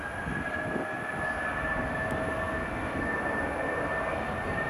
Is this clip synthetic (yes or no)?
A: no